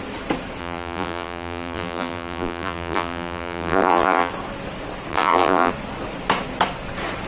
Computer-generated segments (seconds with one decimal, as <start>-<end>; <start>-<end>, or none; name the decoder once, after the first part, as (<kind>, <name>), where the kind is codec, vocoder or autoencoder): 0.6-4.3 (vocoder, BigVGAN v2); 5.1-5.7